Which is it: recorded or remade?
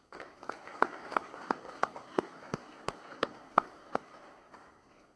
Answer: remade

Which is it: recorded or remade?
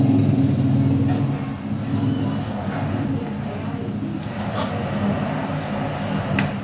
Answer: recorded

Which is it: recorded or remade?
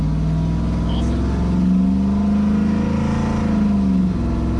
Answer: recorded